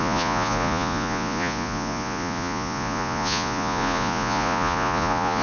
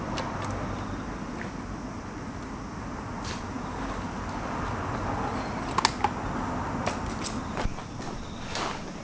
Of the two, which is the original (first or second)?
second